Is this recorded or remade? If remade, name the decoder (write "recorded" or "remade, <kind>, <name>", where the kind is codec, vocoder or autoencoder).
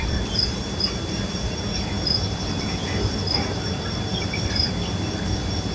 recorded